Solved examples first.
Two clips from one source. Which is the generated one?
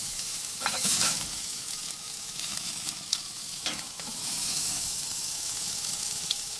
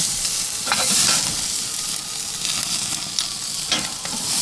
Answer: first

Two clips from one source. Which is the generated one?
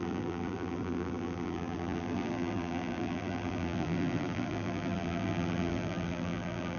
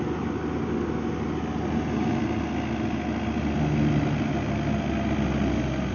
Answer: first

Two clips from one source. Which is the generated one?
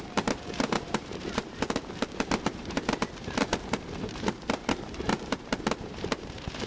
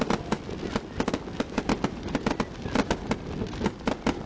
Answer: first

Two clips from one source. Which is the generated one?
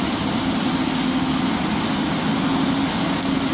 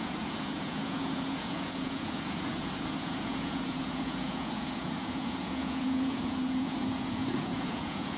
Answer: second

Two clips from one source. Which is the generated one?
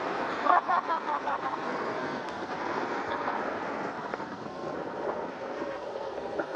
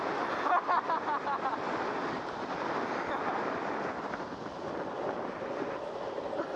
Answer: first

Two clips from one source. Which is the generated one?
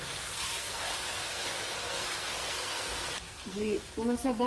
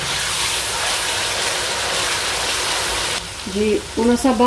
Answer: first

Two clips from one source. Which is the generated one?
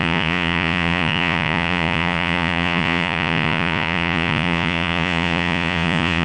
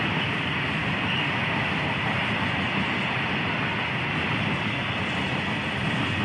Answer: first